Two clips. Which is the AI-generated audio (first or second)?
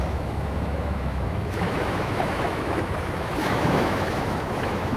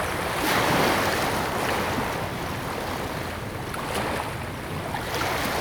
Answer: first